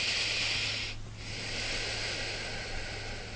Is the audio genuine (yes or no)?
yes